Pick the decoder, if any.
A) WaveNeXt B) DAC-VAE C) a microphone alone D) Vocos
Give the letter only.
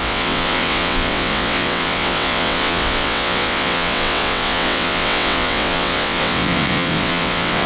A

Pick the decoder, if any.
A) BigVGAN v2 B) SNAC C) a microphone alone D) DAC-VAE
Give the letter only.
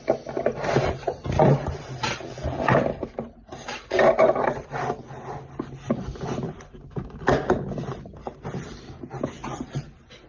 C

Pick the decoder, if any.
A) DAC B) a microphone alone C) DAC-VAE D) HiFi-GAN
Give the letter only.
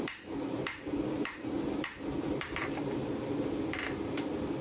B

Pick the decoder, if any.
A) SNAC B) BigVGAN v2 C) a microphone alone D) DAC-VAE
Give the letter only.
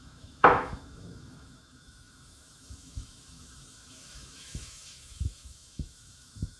D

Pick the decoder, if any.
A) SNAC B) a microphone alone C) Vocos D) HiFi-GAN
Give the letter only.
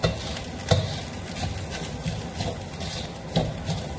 B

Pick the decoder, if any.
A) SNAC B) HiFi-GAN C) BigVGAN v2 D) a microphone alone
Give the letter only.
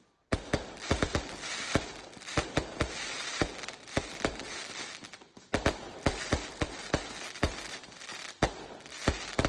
C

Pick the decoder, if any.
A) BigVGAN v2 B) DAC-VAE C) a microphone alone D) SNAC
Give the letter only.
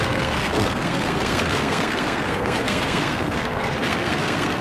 D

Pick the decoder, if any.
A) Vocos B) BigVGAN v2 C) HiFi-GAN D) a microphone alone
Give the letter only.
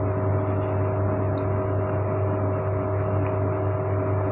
D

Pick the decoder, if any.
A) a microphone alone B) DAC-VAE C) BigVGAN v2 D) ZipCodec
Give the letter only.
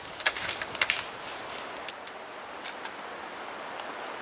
A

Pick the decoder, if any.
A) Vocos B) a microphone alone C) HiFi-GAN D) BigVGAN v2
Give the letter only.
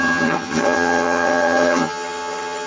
C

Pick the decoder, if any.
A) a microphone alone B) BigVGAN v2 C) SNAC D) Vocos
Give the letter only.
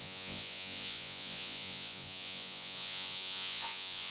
D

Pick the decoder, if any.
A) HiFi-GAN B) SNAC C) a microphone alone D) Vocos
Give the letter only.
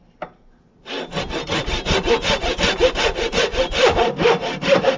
C